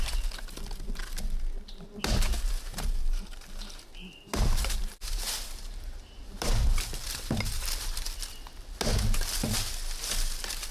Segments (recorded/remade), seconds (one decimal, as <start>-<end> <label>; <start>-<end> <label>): 0.0-2.7 recorded; 2.7-6.9 remade; 6.9-10.7 recorded